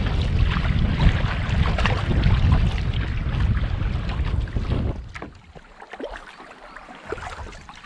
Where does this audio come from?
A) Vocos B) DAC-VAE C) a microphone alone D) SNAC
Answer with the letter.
C